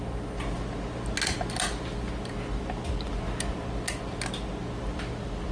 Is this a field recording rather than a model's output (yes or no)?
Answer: yes